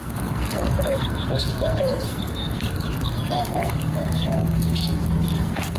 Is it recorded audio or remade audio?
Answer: remade